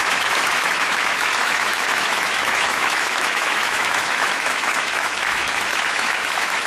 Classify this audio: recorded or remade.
remade